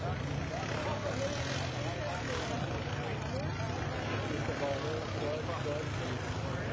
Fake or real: real